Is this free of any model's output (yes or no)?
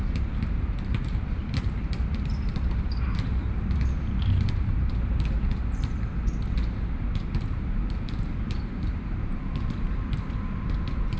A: no